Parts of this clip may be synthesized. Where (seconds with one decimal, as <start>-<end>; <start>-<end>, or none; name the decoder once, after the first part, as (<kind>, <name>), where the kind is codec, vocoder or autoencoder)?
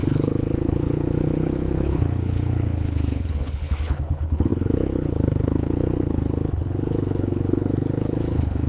0.0-8.7 (codec, HILCodec)